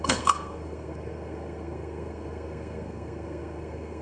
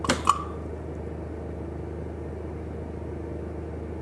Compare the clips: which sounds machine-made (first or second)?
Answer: first